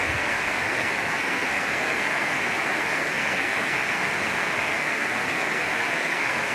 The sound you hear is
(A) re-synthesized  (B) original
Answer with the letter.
A